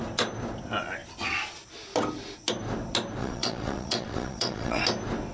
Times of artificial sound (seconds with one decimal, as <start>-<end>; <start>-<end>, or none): 3.2-4.8